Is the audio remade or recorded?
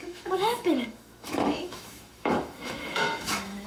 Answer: remade